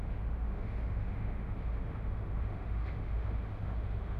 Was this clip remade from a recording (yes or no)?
yes